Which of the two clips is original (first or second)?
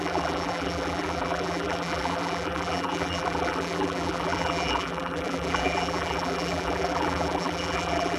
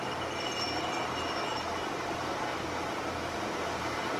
second